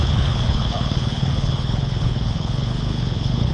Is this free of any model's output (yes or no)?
no